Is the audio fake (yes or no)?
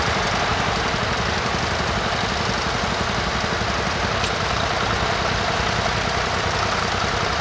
no